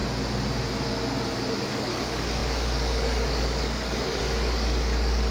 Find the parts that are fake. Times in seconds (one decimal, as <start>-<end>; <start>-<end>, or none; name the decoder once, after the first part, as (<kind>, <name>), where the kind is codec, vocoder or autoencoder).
1.7-5.3 (codec, DAC)